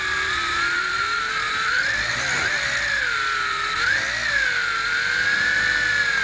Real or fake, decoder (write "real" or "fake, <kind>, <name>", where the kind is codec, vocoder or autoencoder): real